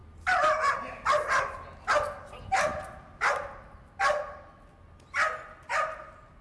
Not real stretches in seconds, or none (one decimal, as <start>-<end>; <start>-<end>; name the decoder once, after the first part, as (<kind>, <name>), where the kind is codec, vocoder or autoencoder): none